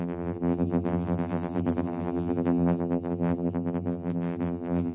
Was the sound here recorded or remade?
remade